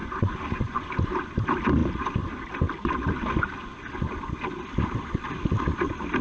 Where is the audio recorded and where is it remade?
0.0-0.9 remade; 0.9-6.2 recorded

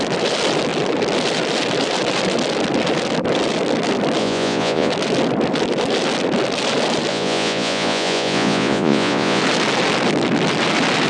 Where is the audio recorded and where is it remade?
0.0-4.2 recorded; 4.2-4.9 remade; 4.9-7.1 recorded; 7.1-9.4 remade; 9.4-11.1 recorded

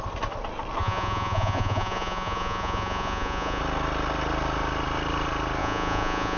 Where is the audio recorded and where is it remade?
0.0-0.8 recorded; 0.8-3.6 remade; 3.6-5.6 recorded; 5.6-6.4 remade

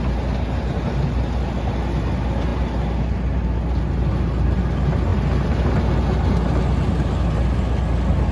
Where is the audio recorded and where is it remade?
0.0-8.3 recorded

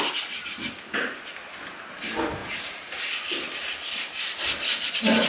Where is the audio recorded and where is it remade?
0.0-5.3 recorded